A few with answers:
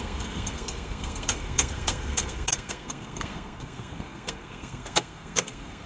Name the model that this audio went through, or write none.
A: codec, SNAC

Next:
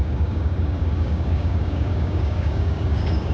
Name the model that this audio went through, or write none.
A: codec, DAC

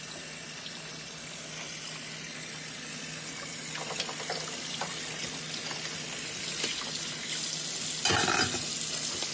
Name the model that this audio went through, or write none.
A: none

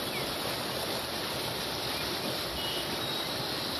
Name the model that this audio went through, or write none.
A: none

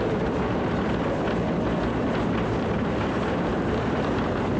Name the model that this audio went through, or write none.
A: vocoder, BigVGAN v2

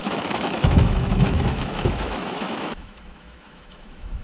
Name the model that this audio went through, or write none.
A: autoencoder, DAC-VAE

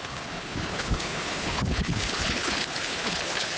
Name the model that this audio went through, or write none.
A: codec, HILCodec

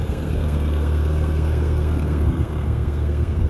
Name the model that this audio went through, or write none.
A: codec, SNAC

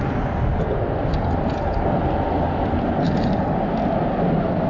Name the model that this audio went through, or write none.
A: none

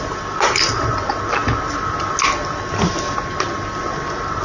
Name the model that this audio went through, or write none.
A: none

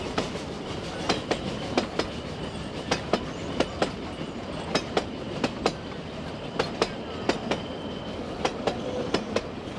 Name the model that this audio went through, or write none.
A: none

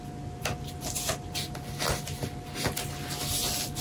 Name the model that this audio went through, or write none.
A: none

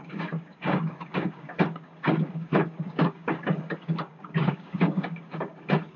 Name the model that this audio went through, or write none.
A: codec, DAC